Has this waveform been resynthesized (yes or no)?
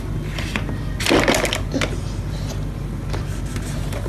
no